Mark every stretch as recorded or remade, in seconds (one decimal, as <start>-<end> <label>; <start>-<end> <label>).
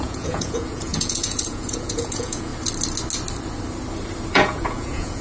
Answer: 0.0-2.5 remade; 2.5-4.3 recorded; 4.3-5.2 remade